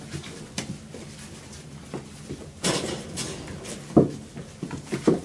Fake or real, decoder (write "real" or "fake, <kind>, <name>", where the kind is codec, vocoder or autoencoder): real